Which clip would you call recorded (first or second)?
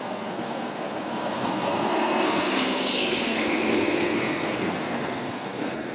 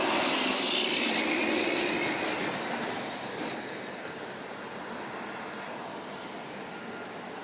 second